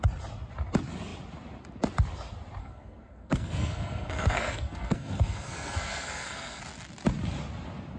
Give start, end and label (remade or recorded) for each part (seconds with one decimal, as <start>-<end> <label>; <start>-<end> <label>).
0.0-2.6 recorded; 2.6-6.6 remade; 6.6-8.0 recorded